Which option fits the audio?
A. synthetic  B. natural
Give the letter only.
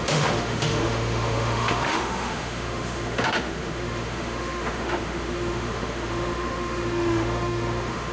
A